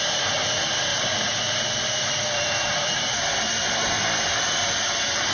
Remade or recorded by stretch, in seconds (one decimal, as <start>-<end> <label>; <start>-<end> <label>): 0.0-0.9 recorded; 0.9-3.7 remade; 3.7-4.6 recorded; 4.6-5.3 remade